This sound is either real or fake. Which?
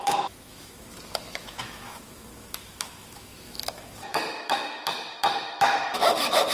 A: fake